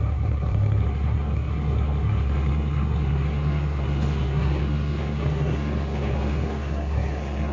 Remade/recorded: remade